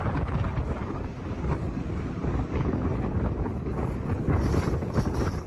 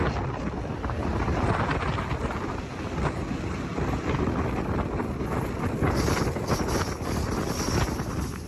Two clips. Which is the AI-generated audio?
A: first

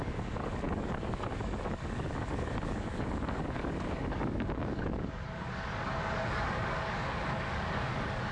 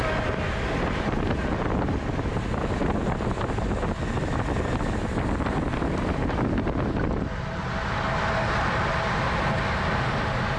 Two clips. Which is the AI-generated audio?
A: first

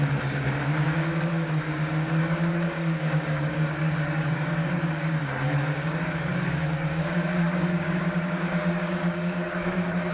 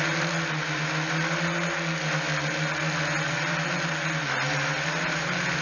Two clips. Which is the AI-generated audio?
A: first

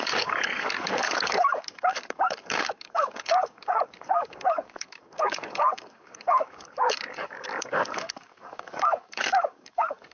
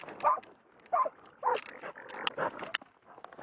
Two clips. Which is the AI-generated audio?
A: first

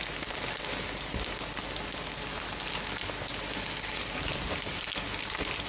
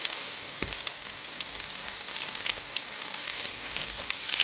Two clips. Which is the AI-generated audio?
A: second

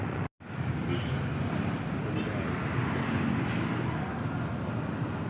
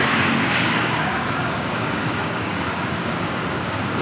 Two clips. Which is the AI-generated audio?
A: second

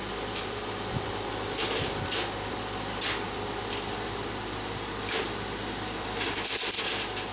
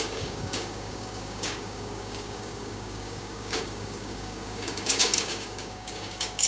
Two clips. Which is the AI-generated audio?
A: second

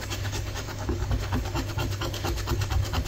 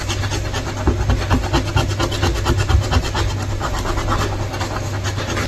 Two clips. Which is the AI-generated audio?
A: first